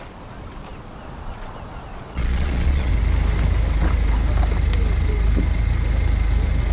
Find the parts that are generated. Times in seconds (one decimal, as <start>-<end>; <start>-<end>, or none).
1.9-2.9